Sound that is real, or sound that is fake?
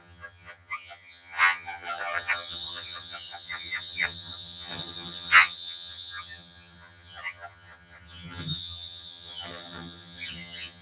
fake